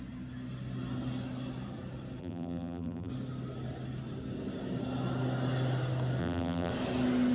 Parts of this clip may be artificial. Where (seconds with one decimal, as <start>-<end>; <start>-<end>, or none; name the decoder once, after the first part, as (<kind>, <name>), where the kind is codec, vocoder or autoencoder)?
2.2-3.1 (vocoder, BigVGAN v2); 6.2-6.7